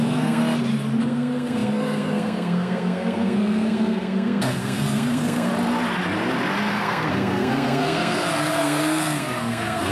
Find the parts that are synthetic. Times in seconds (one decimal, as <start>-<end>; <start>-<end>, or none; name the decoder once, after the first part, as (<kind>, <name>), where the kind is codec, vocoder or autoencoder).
0.0-0.4 (codec, SNAC); 1.0-5.5; 6.7-9.9